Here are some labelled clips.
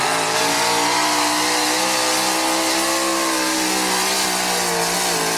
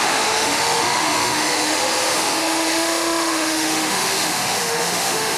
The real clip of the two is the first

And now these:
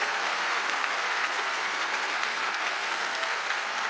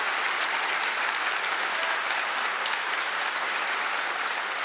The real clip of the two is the second